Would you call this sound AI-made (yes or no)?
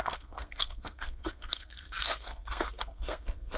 yes